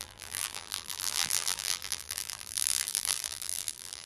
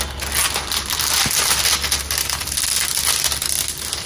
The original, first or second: second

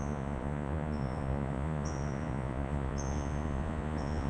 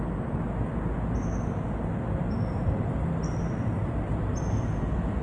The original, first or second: second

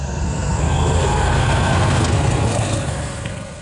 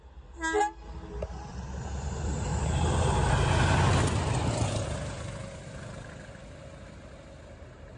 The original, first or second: second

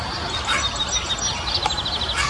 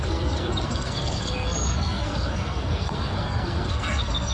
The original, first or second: first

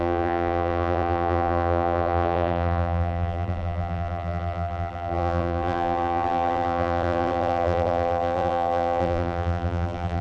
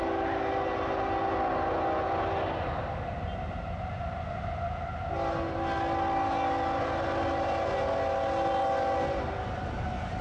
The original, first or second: second